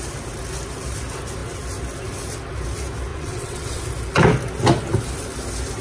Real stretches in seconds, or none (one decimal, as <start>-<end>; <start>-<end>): 0.0-3.1; 3.8-5.8